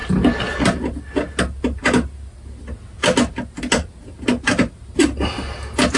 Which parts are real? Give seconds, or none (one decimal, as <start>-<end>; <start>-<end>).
0.0-6.0